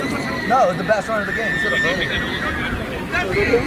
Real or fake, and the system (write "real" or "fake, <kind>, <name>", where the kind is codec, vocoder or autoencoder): real